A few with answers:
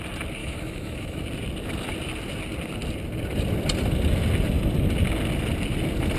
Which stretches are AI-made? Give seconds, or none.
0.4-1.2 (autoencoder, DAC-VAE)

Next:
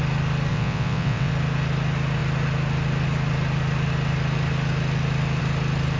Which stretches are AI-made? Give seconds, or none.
0.5-1.3 (vocoder, WaveNeXt)

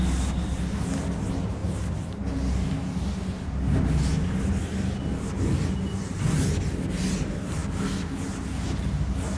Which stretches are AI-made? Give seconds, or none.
none

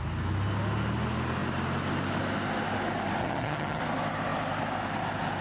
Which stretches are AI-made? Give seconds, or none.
3.2-3.8 (vocoder, HiFi-GAN)

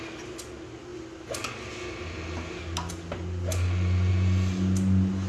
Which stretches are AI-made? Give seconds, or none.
none

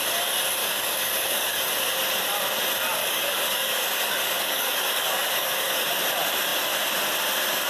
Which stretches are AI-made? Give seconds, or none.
0.6-1.7 (codec, DAC); 3.0-5.9

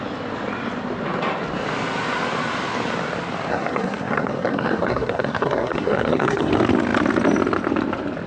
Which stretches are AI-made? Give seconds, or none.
3.5-6.5 (codec, SNAC)